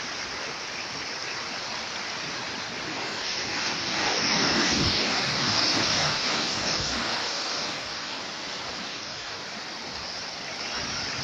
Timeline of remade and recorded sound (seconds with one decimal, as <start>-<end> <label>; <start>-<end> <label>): 0.0-2.9 recorded; 2.9-8.2 remade; 8.2-8.9 recorded; 8.9-9.4 remade; 9.4-11.2 recorded

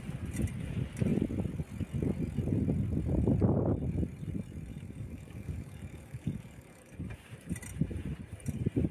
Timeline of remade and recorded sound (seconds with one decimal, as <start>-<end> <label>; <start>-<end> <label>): 0.0-4.7 recorded; 4.7-7.1 remade; 7.1-8.9 recorded

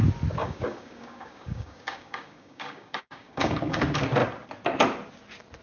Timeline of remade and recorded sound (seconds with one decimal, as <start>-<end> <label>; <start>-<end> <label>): 0.0-0.4 recorded; 0.4-3.8 remade; 3.8-5.6 recorded

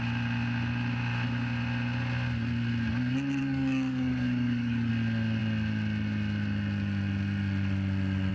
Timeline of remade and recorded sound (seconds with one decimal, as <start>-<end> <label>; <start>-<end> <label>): 0.0-3.4 recorded; 3.4-4.9 remade; 4.9-8.3 recorded

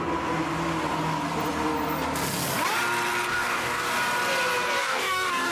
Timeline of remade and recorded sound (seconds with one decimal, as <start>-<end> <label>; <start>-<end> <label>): 0.0-3.3 recorded; 3.3-3.9 remade; 3.9-4.8 recorded; 4.8-5.5 remade

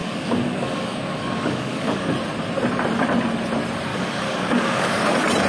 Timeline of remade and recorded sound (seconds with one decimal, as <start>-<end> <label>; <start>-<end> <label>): 0.0-2.1 remade; 2.1-3.9 recorded; 3.9-5.0 remade; 5.0-5.5 recorded

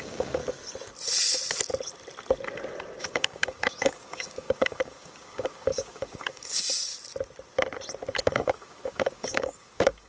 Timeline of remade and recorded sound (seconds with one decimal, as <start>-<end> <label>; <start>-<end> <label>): 0.0-0.4 remade; 0.4-3.0 recorded; 3.0-6.9 remade; 6.9-8.2 recorded; 8.2-10.1 remade

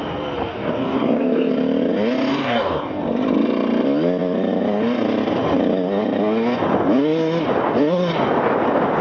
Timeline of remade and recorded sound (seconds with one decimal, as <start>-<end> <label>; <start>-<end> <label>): 0.0-0.5 recorded; 0.5-1.5 remade; 1.5-2.3 recorded; 2.3-3.0 remade; 3.0-9.0 recorded